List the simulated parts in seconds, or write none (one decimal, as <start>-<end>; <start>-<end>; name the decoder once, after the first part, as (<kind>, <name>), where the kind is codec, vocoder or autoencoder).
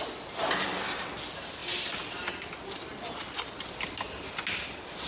none